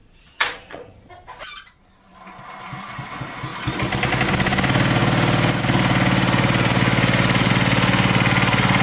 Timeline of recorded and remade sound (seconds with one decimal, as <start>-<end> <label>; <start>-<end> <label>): 0.0-1.1 remade; 1.1-8.8 recorded

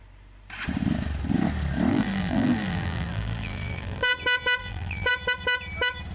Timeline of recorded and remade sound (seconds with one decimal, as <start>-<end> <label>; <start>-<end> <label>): 0.0-1.9 recorded; 1.9-4.1 remade; 4.1-4.6 recorded; 4.6-5.1 remade; 5.1-6.1 recorded

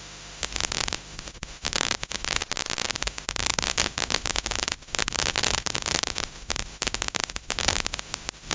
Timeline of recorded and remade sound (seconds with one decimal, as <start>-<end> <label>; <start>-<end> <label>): 0.0-2.4 remade; 2.4-2.9 recorded; 2.9-8.5 remade

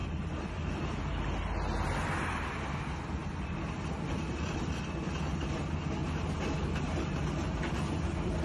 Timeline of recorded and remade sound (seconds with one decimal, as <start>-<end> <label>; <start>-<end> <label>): 0.0-0.8 remade; 0.8-3.2 recorded; 3.2-4.6 remade; 4.6-8.4 recorded

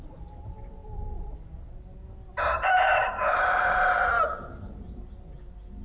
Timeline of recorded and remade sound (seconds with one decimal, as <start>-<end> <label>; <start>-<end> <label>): 0.0-5.8 recorded

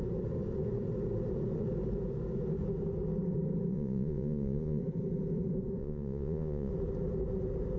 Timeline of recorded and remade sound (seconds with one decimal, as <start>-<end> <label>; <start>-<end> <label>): 0.0-3.7 recorded; 3.7-4.8 remade; 4.8-5.8 recorded; 5.8-6.7 remade; 6.7-7.8 recorded

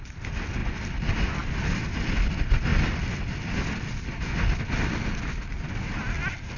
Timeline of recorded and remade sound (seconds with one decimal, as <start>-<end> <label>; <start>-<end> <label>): 0.0-0.6 recorded; 0.6-1.8 remade; 1.8-6.6 recorded